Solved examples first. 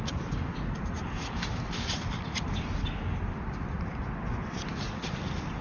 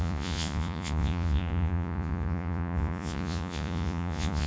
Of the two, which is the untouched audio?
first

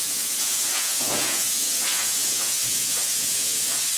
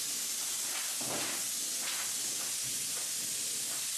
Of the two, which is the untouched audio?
second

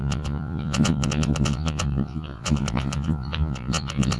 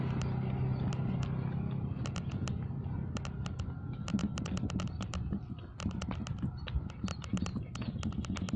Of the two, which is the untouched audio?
second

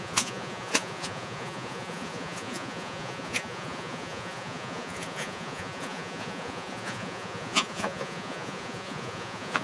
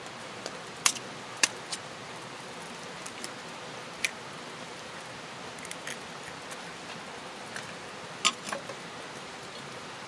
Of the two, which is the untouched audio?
second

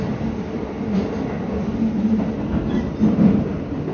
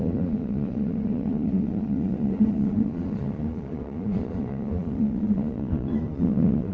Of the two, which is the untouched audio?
first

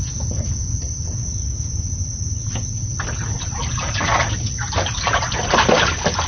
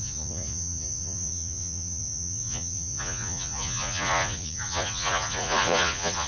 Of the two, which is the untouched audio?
first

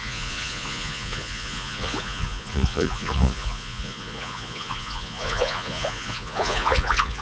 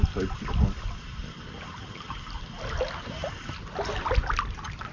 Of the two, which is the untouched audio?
second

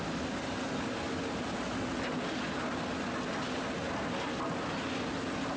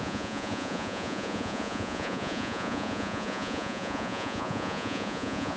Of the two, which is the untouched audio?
first